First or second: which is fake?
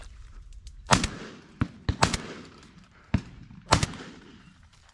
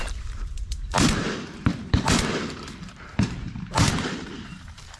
second